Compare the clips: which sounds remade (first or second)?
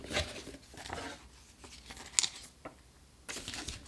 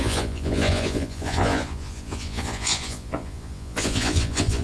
second